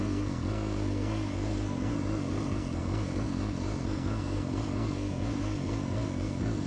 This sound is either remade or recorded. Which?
remade